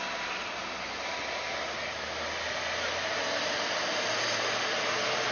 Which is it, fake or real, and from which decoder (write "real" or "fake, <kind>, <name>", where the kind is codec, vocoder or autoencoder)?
real